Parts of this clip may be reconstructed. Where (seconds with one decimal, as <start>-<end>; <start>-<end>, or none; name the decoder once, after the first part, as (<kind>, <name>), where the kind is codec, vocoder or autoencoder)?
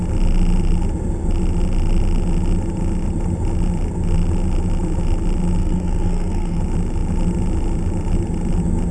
5.6-6.6 (codec, SNAC)